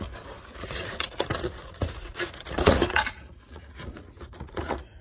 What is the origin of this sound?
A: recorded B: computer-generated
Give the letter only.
B